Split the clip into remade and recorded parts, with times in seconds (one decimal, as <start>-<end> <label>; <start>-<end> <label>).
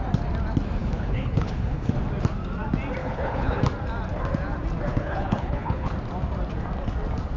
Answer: 0.0-0.8 recorded; 0.8-1.9 remade; 1.9-3.0 recorded; 3.0-3.6 remade; 3.6-4.9 recorded; 4.9-5.9 remade; 5.9-7.4 recorded